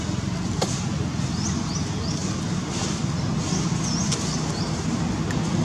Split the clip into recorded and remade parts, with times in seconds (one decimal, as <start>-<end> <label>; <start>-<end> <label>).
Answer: 0.0-5.6 recorded